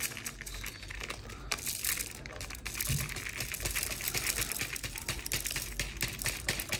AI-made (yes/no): no